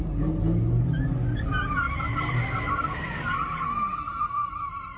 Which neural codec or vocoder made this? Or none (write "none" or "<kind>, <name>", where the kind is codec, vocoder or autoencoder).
none